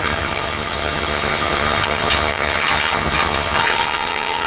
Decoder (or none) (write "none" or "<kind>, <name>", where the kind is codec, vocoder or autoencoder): vocoder, HiFi-GAN